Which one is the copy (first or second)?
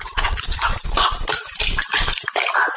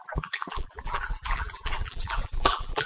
second